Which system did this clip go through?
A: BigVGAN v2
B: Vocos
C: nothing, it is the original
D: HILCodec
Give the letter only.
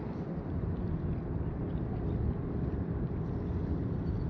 C